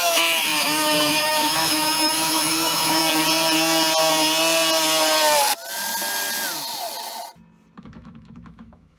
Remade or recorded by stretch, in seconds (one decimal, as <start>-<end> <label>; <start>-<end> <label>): 0.0-3.0 remade; 3.0-7.8 recorded; 7.8-9.0 remade